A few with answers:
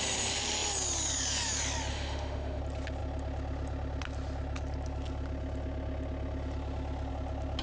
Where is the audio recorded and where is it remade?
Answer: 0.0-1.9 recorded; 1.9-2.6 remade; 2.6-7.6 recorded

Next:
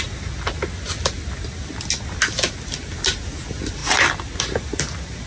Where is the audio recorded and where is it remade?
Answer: 0.0-5.3 recorded

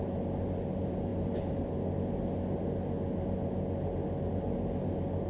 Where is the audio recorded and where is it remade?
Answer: 0.0-5.3 recorded

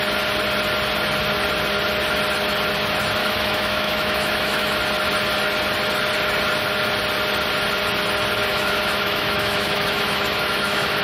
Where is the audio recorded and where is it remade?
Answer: 0.0-3.2 recorded; 3.2-4.8 remade; 4.8-8.5 recorded; 8.5-11.0 remade

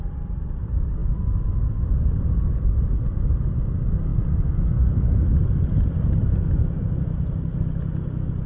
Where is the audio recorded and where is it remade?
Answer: 0.0-8.5 recorded